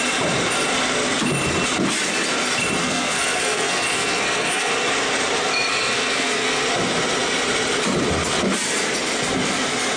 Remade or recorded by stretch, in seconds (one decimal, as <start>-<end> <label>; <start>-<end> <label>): 0.0-2.8 recorded; 2.8-4.7 remade; 4.7-5.7 recorded; 5.7-6.6 remade; 6.6-10.0 recorded